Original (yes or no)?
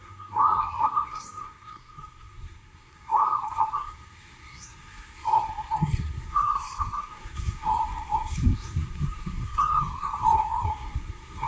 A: no